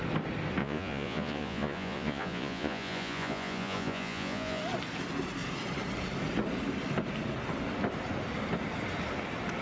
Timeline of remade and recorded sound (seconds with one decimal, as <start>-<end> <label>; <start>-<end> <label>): 0.0-0.6 recorded; 0.6-4.6 remade; 4.6-9.6 recorded